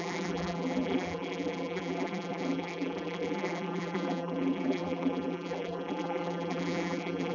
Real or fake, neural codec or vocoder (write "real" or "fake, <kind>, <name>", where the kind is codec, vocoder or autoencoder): fake, vocoder, BigVGAN v2